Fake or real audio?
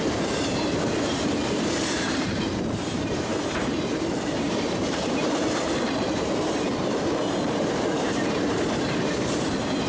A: fake